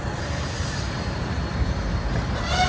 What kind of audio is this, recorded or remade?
recorded